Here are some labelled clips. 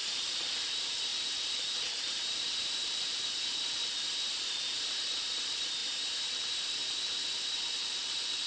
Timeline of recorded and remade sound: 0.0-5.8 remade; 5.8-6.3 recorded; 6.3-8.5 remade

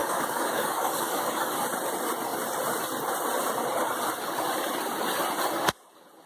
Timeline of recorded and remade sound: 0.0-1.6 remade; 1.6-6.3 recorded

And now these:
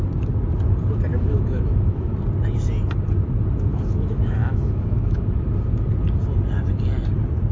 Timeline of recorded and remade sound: 0.0-1.1 recorded; 1.1-2.1 remade; 2.1-3.7 recorded; 3.7-5.4 remade; 5.4-7.5 recorded

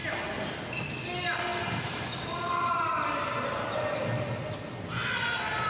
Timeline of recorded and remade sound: 0.0-5.7 recorded

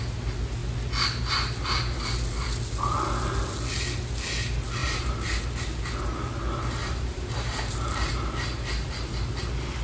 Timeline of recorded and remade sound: 0.0-4.8 recorded; 4.8-5.4 remade; 5.4-6.8 recorded; 6.8-8.1 remade; 8.1-9.8 recorded